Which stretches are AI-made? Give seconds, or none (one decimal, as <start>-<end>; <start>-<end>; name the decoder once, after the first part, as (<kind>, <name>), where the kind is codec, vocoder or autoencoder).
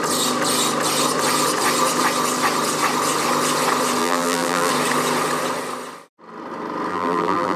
4.0-4.7 (vocoder, BigVGAN v2); 6.9-7.6